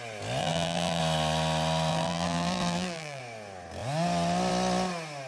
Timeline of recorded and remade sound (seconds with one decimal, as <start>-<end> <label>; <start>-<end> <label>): 0.0-0.4 recorded; 0.4-1.0 remade; 1.0-1.9 recorded; 1.9-3.2 remade; 3.2-5.3 recorded